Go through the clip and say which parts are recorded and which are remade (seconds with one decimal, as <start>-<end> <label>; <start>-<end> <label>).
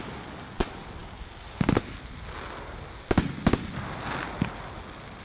0.0-5.2 recorded